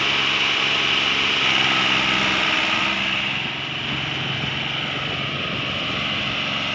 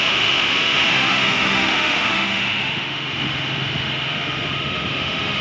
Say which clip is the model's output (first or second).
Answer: second